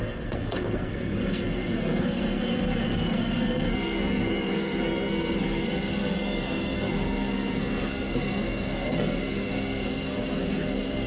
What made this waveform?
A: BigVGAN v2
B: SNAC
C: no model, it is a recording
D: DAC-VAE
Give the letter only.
B